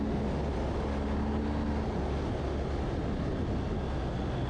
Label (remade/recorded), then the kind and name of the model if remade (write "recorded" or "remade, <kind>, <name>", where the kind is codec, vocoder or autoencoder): recorded